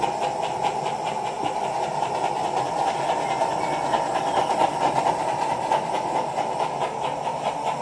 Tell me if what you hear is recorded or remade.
recorded